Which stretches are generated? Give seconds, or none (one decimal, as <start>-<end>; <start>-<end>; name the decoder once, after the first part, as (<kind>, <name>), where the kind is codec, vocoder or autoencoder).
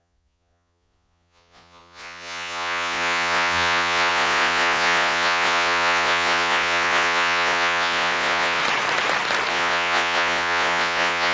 0.0-8.6 (vocoder, Vocos); 9.5-11.3